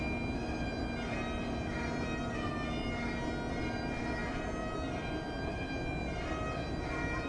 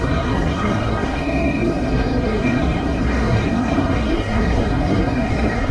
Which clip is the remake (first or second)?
second